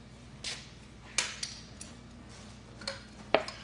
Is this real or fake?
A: real